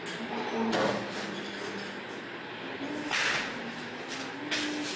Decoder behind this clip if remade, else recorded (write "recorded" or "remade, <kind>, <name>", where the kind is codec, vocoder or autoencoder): recorded